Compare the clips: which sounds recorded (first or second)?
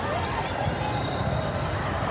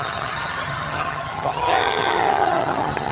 first